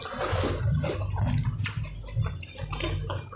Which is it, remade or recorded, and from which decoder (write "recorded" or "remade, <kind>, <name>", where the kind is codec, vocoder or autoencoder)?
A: recorded